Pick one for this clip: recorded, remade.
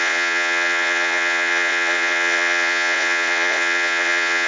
remade